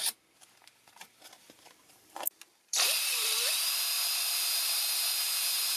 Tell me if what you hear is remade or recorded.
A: remade